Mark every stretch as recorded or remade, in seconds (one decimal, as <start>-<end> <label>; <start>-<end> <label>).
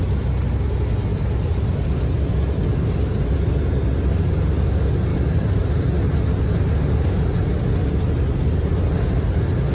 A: 0.0-1.1 recorded; 1.1-2.0 remade; 2.0-5.1 recorded; 5.1-6.8 remade; 6.8-9.7 recorded